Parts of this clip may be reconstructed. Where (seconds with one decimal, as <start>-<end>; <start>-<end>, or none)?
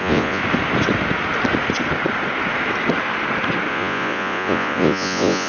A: 0.0-0.4; 3.7-5.5